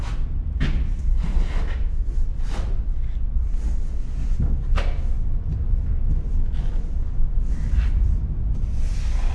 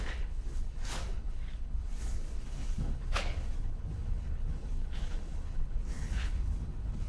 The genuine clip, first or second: first